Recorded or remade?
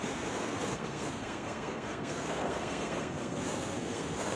remade